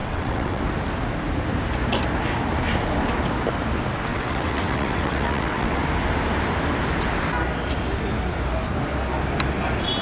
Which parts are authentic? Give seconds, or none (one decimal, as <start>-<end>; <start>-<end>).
0.6-4.1; 5.8-10.0